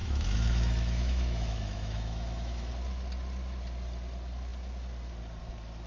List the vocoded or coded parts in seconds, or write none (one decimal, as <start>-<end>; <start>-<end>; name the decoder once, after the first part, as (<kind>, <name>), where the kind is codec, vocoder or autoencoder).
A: 0.0-2.7 (autoencoder, DAC-VAE)